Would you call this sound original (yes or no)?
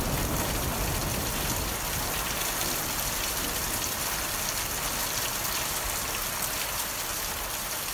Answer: yes